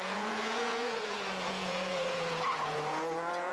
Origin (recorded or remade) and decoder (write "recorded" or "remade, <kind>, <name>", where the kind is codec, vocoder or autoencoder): remade, vocoder, Vocos